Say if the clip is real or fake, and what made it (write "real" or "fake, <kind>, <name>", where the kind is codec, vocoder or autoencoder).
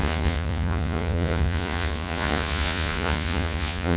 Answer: fake, vocoder, Vocos